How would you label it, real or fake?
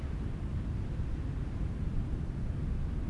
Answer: real